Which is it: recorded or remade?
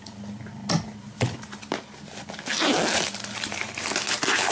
recorded